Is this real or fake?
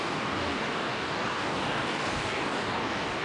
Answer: fake